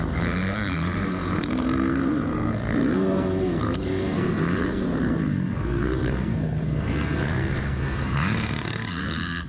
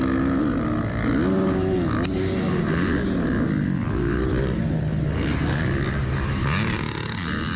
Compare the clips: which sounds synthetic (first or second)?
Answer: first